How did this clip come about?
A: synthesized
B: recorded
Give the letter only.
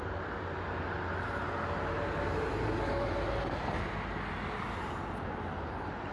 B